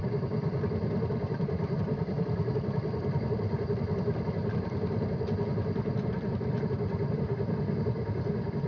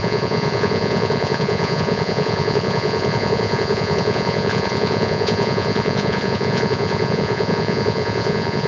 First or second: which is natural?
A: first